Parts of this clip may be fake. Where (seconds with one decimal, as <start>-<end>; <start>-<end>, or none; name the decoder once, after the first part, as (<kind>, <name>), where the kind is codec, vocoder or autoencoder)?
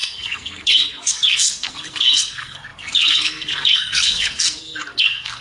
0.0-5.4 (codec, SNAC)